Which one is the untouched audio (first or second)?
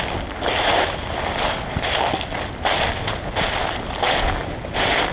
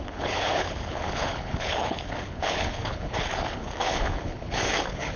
first